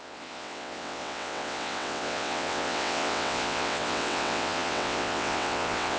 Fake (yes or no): yes